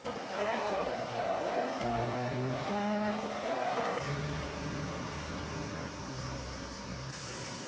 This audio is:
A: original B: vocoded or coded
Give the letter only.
B